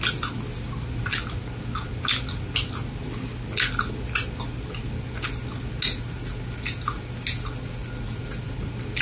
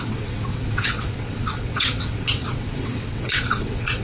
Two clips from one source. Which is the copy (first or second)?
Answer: second